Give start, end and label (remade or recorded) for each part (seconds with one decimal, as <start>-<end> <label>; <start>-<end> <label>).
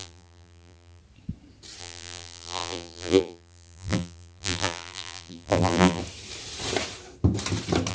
0.0-1.0 remade; 1.0-1.8 recorded; 1.8-6.0 remade; 6.0-7.9 recorded